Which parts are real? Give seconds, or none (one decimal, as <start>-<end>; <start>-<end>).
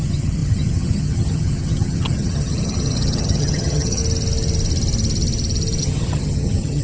4.0-5.8